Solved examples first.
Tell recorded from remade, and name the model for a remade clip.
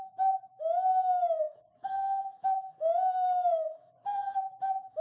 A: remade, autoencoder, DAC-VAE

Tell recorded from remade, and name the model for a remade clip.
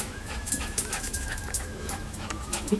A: remade, autoencoder, DAC-VAE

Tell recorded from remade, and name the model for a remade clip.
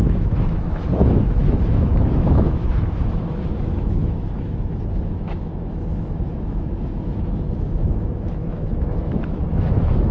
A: remade, autoencoder, DAC-VAE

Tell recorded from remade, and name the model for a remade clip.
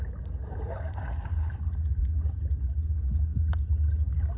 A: recorded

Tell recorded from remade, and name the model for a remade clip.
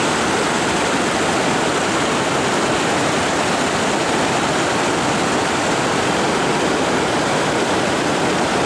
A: recorded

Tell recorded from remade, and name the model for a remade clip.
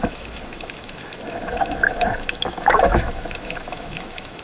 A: remade, autoencoder, DAC-VAE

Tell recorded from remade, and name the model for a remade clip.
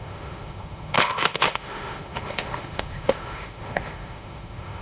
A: remade, autoencoder, DAC-VAE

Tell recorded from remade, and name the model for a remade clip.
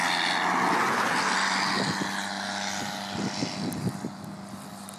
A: recorded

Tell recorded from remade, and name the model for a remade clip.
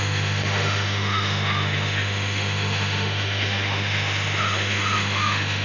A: remade, autoencoder, DAC-VAE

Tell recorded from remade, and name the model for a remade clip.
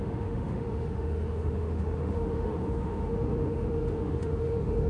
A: remade, autoencoder, DAC-VAE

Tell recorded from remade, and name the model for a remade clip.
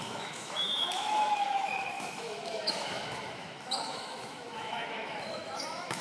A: remade, autoencoder, DAC-VAE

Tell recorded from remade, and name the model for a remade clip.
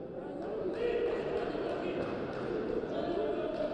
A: recorded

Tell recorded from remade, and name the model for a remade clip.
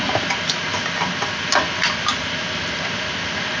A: recorded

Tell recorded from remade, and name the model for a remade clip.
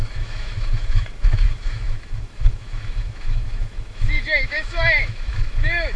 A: remade, autoencoder, DAC-VAE